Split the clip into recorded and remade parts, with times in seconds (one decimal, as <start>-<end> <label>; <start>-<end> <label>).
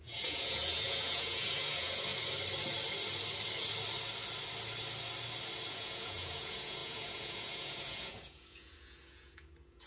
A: 0.0-2.1 remade; 2.1-5.7 recorded; 5.7-9.9 remade